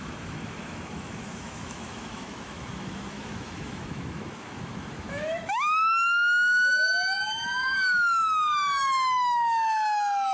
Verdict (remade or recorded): remade